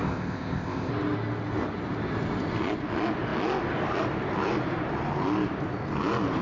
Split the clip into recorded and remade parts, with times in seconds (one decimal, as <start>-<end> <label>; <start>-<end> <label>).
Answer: 0.0-0.9 remade; 0.9-6.4 recorded